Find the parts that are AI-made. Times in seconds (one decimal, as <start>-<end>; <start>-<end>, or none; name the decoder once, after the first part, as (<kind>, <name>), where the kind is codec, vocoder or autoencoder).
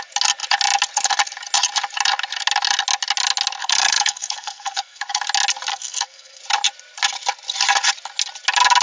3.6-5.2 (codec, SNAC); 5.7-6.4